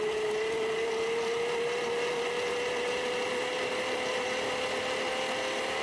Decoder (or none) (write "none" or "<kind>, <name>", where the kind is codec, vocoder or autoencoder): none